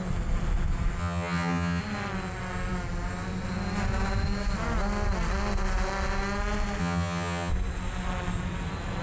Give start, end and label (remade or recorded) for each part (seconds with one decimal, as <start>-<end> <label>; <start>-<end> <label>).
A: 0.0-1.0 recorded; 1.0-1.8 remade; 1.8-6.8 recorded; 6.8-7.5 remade; 7.5-9.0 recorded